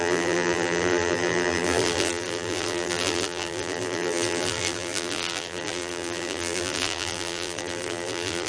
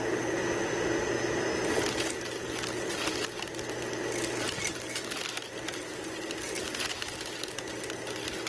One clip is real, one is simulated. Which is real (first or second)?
second